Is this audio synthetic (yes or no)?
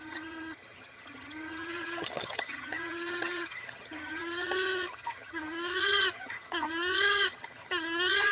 yes